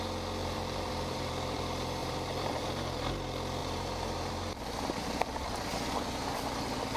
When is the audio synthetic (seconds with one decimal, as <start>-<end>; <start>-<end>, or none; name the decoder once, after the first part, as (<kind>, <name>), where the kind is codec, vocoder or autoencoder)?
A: 0.4-1.6 (vocoder, BigVGAN v2); 2.0-3.1; 3.6-6.4